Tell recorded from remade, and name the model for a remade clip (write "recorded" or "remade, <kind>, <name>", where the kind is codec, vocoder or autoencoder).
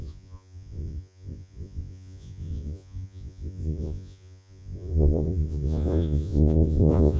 remade, vocoder, Vocos